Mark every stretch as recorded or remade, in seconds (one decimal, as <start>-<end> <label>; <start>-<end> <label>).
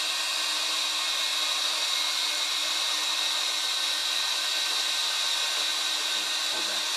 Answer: 0.0-7.0 recorded